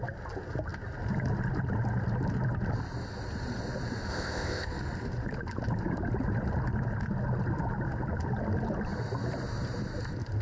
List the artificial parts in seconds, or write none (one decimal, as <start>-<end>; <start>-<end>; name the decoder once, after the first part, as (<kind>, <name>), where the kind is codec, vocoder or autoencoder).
4.1-4.7 (codec, ZipCodec)